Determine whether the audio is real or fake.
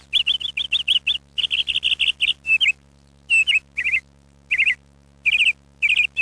real